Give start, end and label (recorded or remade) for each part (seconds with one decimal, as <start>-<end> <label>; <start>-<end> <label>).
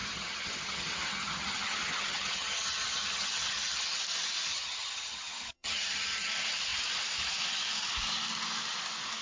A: 0.0-3.9 remade; 3.9-4.5 recorded; 4.5-6.3 remade; 6.3-9.2 recorded